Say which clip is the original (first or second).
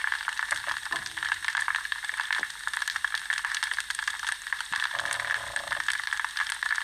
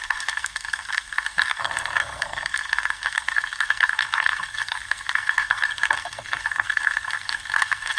first